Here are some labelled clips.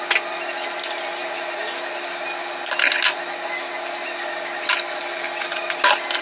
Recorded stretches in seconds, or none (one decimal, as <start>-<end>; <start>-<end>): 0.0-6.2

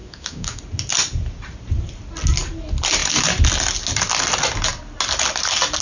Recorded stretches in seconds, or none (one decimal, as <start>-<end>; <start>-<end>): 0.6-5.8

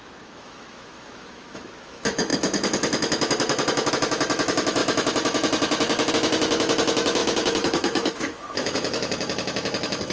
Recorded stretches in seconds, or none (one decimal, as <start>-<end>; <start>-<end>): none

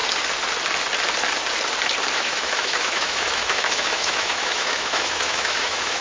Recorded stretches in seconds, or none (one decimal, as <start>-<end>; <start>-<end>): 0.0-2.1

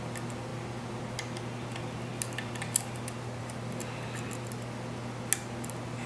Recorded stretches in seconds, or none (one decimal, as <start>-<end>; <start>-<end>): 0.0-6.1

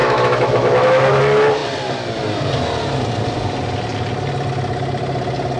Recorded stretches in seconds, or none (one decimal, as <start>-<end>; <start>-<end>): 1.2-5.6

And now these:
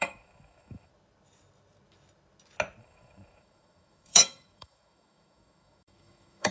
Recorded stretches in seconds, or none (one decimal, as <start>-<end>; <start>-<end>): 0.9-2.8

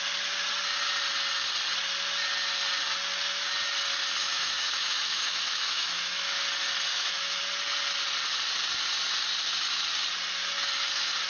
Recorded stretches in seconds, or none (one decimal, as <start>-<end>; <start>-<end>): 0.0-4.2; 6.4-6.9; 7.4-11.3